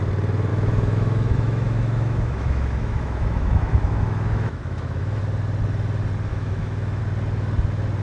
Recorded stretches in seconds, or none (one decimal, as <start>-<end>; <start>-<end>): 0.0-0.5; 5.2-6.3; 7.0-8.0